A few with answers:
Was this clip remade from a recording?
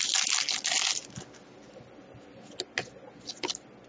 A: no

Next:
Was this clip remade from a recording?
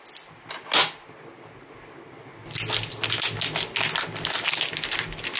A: no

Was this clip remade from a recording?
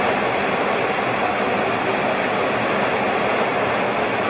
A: no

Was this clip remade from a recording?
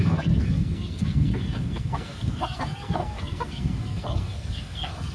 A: yes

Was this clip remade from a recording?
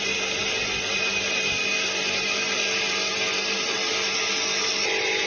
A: no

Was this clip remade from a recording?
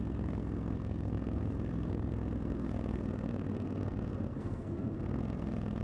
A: yes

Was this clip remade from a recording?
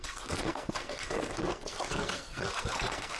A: yes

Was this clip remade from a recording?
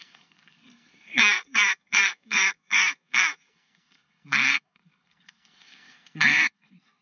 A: yes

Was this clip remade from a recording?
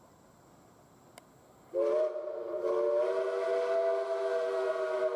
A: no